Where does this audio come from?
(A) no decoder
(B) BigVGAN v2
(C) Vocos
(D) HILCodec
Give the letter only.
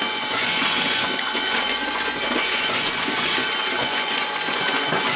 C